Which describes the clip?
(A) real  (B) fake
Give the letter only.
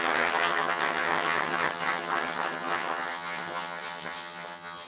B